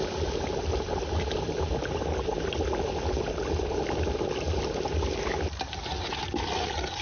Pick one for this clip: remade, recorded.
recorded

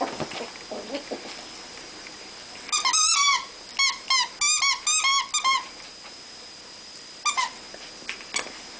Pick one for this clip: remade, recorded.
recorded